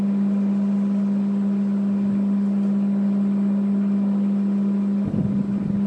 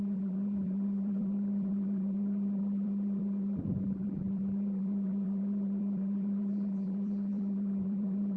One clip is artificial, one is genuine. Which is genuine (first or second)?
first